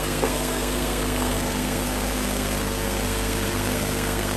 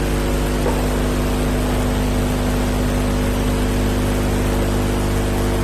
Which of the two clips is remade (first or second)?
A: first